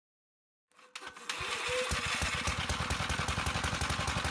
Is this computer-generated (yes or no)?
no